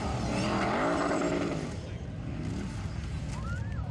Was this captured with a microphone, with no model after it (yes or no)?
yes